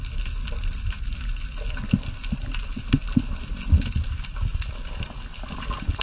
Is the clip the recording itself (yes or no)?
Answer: yes